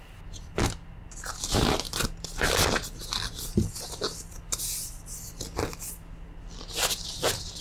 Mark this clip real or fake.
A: real